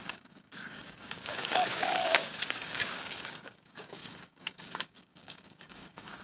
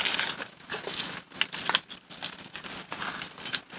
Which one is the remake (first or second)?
first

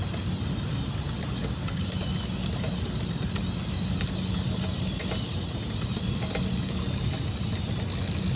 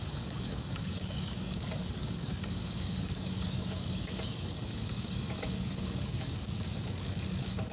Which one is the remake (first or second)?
second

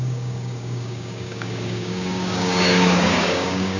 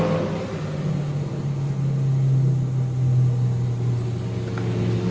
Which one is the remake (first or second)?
first